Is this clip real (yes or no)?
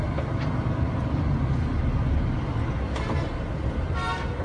yes